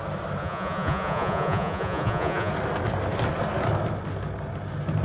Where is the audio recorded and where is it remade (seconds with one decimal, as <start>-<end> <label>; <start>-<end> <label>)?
0.0-0.4 recorded; 0.4-2.5 remade; 2.5-5.0 recorded